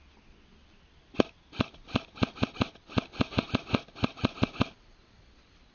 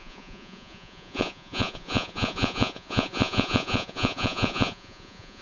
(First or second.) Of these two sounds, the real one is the first